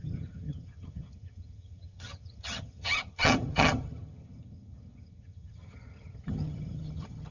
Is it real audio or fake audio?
fake